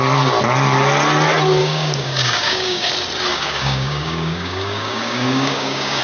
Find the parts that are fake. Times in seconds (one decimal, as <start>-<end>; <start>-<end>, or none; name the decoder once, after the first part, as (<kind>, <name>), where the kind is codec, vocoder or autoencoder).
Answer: 1.6-2.9 (codec, DAC); 3.3-6.0